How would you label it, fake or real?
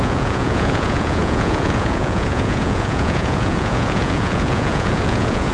fake